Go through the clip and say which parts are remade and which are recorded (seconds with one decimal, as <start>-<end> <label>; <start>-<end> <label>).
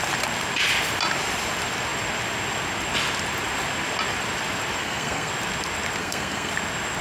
0.0-4.8 recorded; 4.8-5.3 remade; 5.3-6.0 recorded; 6.0-6.5 remade; 6.5-7.0 recorded